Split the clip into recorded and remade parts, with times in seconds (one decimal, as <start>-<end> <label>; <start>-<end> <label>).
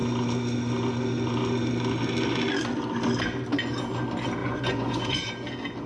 0.0-4.4 recorded; 4.4-5.3 remade; 5.3-5.9 recorded